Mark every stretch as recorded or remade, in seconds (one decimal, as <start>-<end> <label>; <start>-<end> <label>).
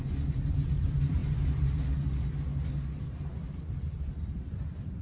0.0-1.2 remade; 1.2-3.0 recorded; 3.0-5.0 remade